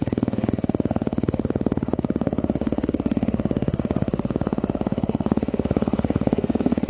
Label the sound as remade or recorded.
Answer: remade